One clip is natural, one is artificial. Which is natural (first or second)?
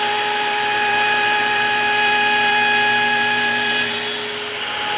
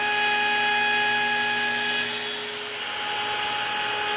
second